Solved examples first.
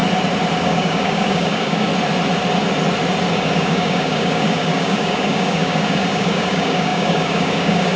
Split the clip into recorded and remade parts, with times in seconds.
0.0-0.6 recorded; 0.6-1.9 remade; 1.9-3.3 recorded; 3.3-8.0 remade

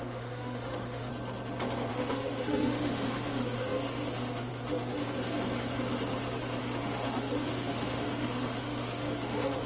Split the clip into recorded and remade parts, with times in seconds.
0.0-1.1 remade; 1.1-1.9 recorded; 1.9-5.0 remade; 5.0-6.6 recorded; 6.6-9.7 remade